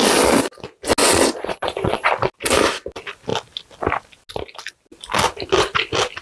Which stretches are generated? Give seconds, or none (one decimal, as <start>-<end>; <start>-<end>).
1.0-2.1